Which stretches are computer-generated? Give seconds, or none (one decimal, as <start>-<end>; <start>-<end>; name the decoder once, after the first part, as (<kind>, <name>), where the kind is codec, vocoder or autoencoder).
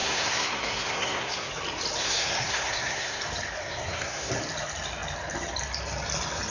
0.0-1.5 (codec, SNAC); 2.0-3.2; 3.6-4.3